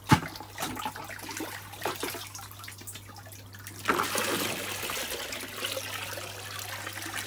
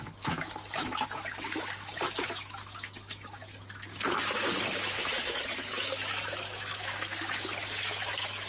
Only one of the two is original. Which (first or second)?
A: first